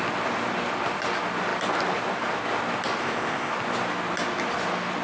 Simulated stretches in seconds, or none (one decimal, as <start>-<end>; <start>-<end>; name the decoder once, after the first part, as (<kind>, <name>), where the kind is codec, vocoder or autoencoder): 3.0-3.5 (codec, ZipCodec)